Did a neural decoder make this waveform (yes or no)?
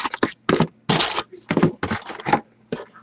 no